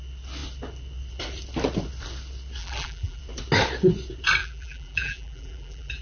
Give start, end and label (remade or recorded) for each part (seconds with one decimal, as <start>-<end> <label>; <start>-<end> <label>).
0.0-2.6 recorded; 2.6-3.2 remade; 3.2-4.4 recorded; 4.4-6.0 remade